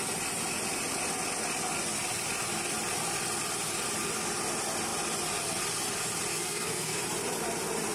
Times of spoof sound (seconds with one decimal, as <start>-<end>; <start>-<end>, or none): 6.3-7.0